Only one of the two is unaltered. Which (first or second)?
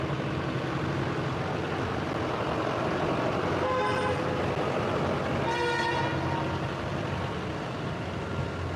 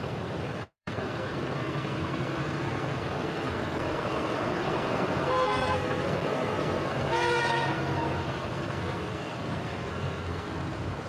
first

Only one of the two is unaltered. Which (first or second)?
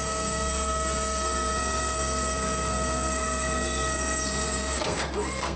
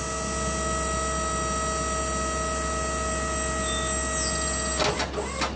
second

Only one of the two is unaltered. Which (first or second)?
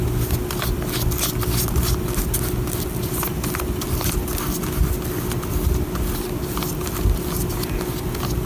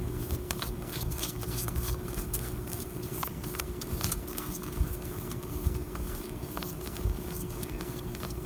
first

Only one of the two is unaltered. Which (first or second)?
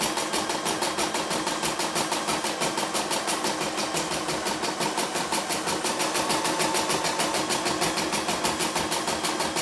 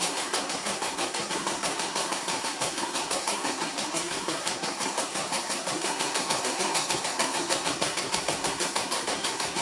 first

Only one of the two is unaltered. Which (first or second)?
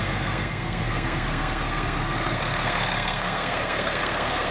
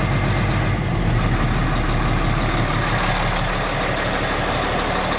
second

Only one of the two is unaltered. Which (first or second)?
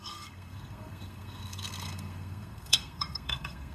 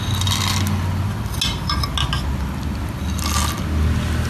second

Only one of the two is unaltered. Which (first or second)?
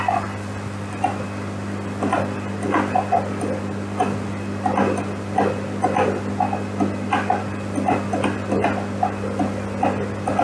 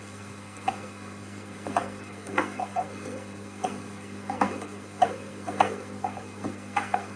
first